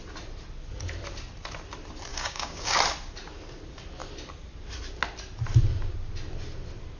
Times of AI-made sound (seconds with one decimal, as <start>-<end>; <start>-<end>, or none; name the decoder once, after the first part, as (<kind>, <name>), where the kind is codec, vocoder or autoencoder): 2.1-2.8 (codec, DAC)